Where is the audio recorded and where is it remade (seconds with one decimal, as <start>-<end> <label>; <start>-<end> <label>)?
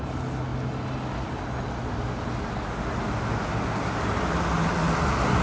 0.0-5.4 recorded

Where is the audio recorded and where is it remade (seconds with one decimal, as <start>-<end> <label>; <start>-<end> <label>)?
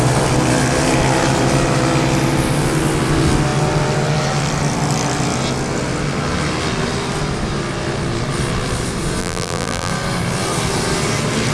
0.0-9.2 recorded; 9.2-9.9 remade; 9.9-11.5 recorded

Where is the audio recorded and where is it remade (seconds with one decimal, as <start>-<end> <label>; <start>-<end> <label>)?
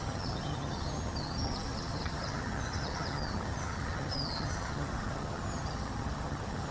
0.0-6.7 remade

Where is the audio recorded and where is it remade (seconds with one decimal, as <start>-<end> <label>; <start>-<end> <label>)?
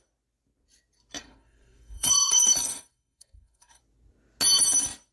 0.0-1.2 recorded; 1.2-3.8 remade; 3.8-5.1 recorded